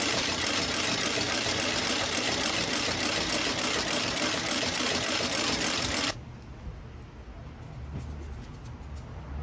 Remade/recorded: recorded